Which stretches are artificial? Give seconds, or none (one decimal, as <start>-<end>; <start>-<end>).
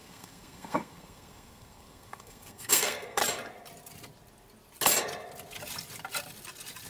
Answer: 0.0-3.2